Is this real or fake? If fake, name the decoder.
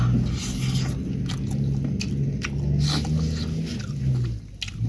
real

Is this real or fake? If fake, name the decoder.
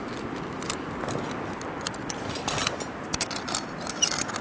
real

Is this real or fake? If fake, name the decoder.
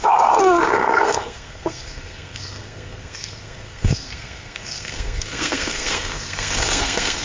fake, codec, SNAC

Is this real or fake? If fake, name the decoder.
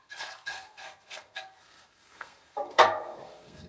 fake, codec, SNAC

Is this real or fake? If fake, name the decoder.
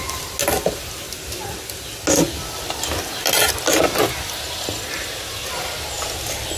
real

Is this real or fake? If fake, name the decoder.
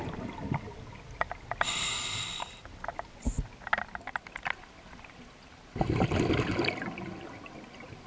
real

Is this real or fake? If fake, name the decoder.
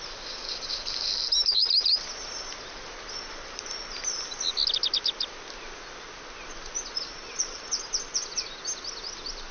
real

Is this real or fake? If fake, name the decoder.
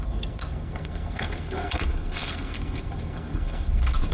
fake, codec, SNAC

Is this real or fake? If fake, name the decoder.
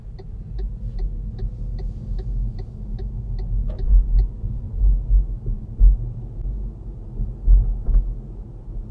real